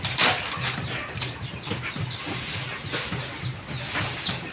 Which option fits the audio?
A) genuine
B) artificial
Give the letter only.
A